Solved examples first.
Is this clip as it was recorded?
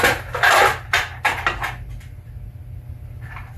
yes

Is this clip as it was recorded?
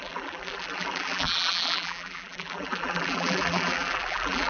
no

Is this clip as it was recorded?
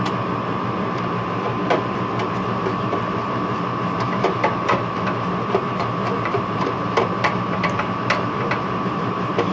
no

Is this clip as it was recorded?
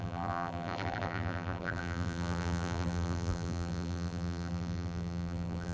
no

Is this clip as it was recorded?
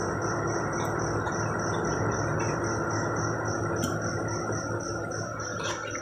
yes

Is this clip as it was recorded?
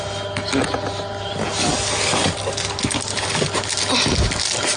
yes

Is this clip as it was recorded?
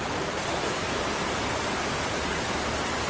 yes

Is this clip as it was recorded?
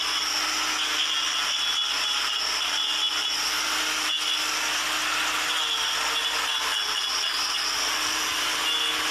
yes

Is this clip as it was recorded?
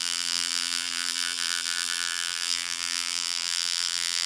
no